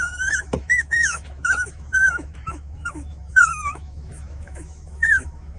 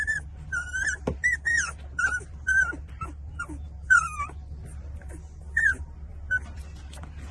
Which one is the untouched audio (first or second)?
second